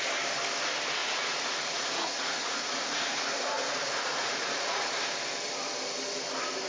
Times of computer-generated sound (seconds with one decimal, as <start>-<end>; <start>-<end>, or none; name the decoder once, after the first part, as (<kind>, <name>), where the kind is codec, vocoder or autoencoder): 1.0-5.0 (vocoder, Vocos)